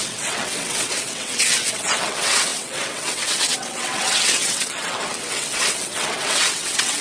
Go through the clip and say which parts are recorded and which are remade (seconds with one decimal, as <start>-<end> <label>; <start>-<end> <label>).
0.0-7.0 remade